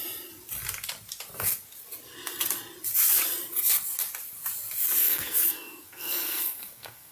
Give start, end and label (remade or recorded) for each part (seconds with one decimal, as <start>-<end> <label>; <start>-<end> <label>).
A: 0.0-5.0 recorded; 5.0-7.1 remade